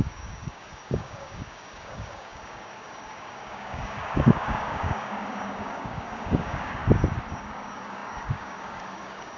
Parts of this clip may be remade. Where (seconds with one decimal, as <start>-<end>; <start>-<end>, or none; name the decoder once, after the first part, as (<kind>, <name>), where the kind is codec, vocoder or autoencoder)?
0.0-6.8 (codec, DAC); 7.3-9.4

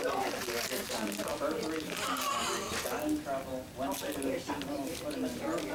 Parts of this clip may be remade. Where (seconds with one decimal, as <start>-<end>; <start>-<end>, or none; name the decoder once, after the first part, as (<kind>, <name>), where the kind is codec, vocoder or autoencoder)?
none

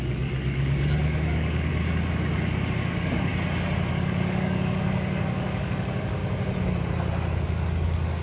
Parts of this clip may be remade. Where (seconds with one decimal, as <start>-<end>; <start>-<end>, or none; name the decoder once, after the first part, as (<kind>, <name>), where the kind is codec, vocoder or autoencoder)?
0.0-1.7 (codec, DAC); 2.8-3.3; 3.9-6.2; 7.3-8.2

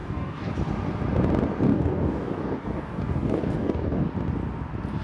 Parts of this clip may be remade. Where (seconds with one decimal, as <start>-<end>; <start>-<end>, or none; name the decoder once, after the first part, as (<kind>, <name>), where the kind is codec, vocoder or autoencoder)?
0.0-0.5 (codec, DAC); 1.7-4.0

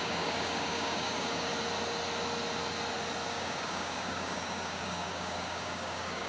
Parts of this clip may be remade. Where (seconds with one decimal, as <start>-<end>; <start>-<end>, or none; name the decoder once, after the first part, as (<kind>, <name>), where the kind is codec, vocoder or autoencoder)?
0.0-1.5 (codec, DAC); 3.3-6.3

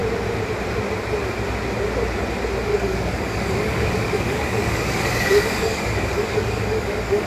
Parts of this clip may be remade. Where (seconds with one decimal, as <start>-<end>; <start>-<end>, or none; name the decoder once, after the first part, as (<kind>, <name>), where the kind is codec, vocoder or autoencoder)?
2.7-7.3 (codec, DAC)

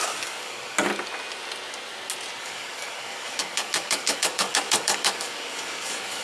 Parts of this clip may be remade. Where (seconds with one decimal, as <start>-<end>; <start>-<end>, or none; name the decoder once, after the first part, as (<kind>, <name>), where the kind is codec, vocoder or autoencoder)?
0.0-0.9 (codec, DAC); 2.4-6.2